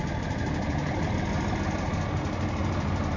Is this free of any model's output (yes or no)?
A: yes